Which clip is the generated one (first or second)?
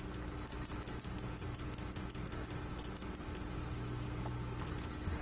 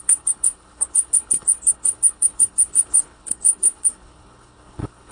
second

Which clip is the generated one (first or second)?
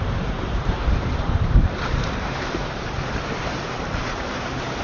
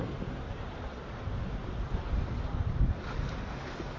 first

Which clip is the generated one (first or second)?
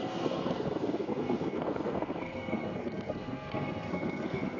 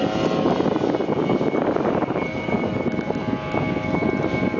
first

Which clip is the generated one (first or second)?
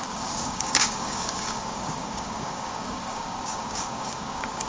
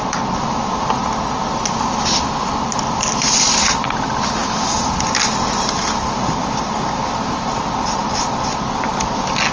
first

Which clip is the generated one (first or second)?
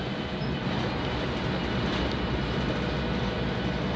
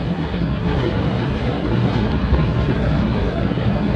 second